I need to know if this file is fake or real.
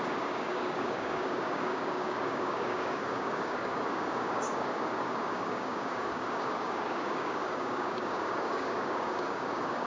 fake